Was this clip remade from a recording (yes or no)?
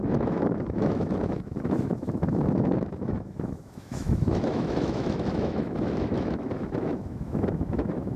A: yes